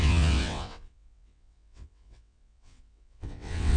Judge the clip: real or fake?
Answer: fake